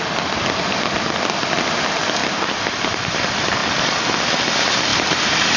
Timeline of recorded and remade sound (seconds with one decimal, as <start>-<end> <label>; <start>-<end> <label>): 0.0-2.2 recorded; 2.2-3.2 remade; 3.2-4.9 recorded; 4.9-5.6 remade